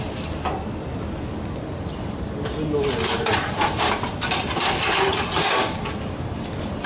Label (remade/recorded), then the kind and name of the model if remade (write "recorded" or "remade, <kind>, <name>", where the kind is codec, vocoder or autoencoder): recorded